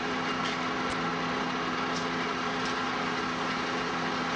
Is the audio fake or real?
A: real